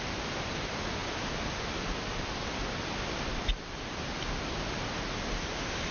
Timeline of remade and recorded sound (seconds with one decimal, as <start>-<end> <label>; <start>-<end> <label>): 0.0-5.9 recorded